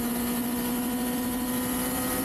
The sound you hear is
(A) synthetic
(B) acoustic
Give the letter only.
B